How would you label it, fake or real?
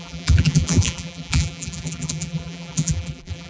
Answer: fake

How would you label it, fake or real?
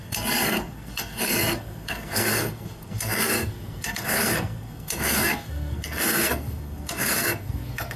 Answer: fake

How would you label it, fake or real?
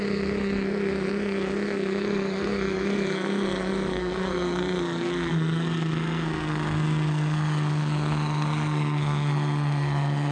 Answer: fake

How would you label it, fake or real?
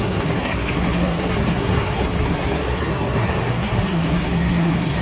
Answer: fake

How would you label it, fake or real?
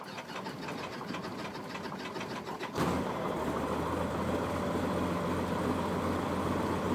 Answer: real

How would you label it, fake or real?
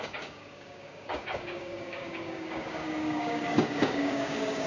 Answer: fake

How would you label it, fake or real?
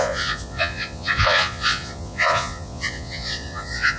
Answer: fake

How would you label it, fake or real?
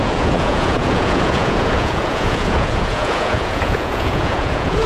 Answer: fake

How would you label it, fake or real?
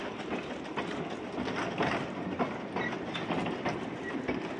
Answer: real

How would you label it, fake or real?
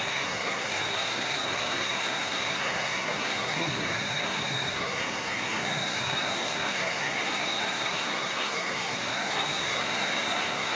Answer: fake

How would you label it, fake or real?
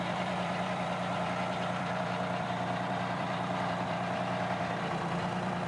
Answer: fake